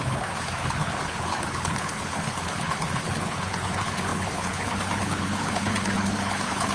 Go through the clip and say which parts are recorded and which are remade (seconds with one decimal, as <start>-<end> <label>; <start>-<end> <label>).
0.0-6.7 remade